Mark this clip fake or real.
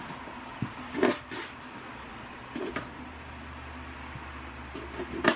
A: fake